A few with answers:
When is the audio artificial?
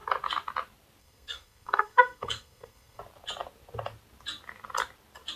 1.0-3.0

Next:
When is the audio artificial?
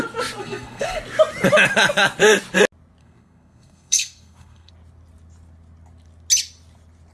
0.4-1.0; 3.0-4.7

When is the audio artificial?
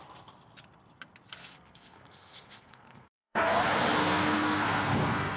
1.4-3.6; 4.0-5.4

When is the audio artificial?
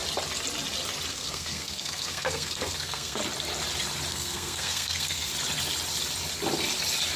1.1-3.2; 4.1-5.3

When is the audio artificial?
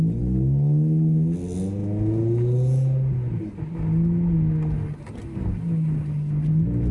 none